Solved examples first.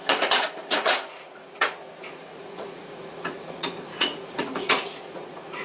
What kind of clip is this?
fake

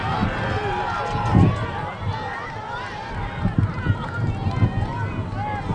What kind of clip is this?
real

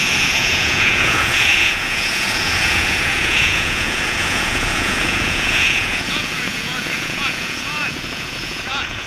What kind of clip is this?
fake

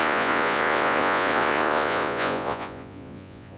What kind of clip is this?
fake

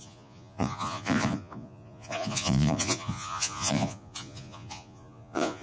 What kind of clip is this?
fake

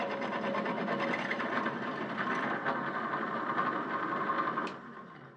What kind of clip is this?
real